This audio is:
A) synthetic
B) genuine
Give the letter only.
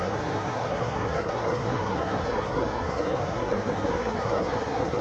A